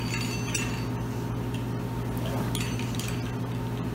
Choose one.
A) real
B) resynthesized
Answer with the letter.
A